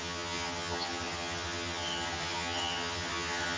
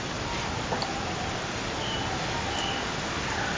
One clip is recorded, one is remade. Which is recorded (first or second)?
second